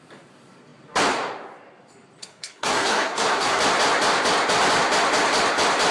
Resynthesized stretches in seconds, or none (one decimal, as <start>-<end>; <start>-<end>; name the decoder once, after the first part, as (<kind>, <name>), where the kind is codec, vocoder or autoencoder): 2.2-3.6 (codec, SNAC)